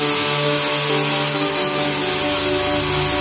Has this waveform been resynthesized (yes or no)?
no